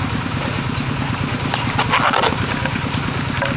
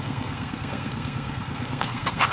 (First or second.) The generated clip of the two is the second